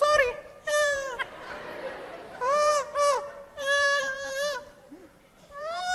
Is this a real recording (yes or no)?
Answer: no